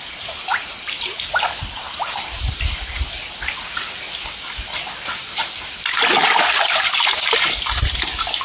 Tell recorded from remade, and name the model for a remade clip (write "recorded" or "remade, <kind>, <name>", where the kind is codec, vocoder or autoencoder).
recorded